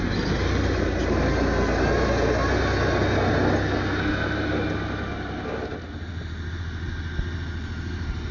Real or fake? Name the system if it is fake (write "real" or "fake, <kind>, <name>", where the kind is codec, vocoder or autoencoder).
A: real